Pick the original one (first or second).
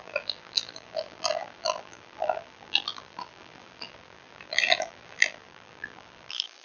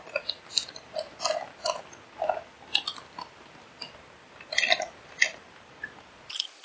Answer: second